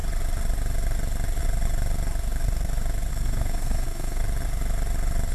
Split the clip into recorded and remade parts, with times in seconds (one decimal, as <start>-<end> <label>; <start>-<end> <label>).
0.0-3.1 recorded; 3.1-4.2 remade; 4.2-5.3 recorded